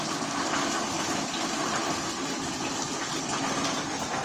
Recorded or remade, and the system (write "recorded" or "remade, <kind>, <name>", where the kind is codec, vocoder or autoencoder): recorded